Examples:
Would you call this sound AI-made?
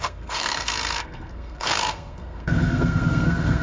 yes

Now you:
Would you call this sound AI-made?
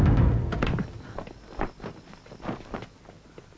no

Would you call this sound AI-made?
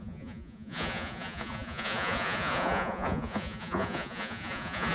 yes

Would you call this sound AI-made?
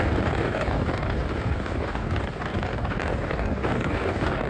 yes